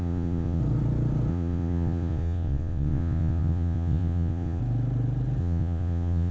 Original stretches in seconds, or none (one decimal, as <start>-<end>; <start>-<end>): 0.6-1.3; 4.6-5.4